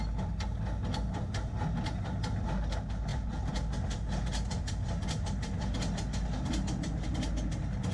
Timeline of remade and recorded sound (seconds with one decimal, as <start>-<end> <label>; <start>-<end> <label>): 0.0-7.9 recorded

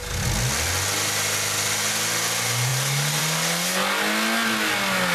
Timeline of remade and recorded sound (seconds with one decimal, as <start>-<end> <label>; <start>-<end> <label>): 0.0-5.1 recorded

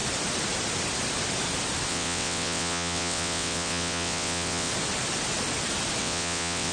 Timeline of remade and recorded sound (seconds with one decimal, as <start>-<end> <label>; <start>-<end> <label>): 0.0-1.9 recorded; 1.9-4.7 remade; 4.7-6.0 recorded; 6.0-6.7 remade

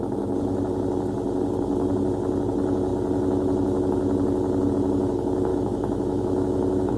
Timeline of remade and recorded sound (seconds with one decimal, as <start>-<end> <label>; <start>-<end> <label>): 0.0-5.5 recorded; 5.5-7.0 remade

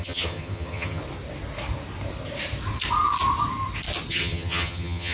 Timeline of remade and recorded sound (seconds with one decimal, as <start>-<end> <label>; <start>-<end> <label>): 0.0-1.0 remade; 1.0-4.1 recorded; 4.1-5.1 remade

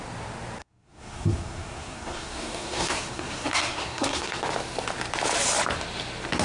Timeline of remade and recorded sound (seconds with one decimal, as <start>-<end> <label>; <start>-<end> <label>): 0.0-0.6 recorded; 0.6-4.4 remade; 4.4-6.4 recorded